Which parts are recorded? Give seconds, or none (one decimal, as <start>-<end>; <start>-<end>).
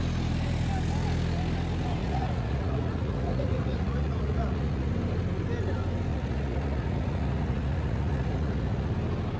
0.0-2.0; 4.9-6.1; 8.9-9.4